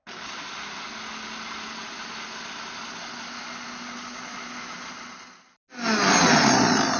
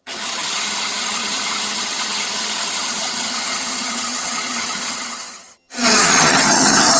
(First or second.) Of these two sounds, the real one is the first